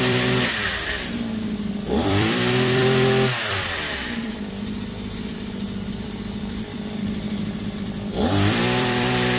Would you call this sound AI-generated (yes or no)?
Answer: yes